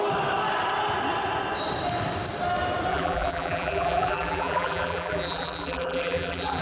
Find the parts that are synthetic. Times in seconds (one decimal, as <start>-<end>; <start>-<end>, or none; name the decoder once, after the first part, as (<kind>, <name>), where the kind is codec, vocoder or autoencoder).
2.9-6.6 (vocoder, BigVGAN v2)

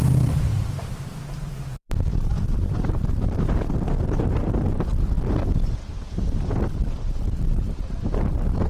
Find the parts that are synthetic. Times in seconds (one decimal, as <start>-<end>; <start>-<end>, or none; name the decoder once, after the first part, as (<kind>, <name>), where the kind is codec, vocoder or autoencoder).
0.0-4.9 (vocoder, BigVGAN v2); 7.5-8.7

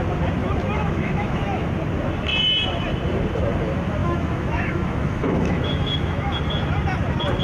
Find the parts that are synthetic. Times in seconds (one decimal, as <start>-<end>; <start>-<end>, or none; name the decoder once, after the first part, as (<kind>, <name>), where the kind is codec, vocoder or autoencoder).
0.4-1.7 (autoencoder, DAC-VAE); 4.0-6.4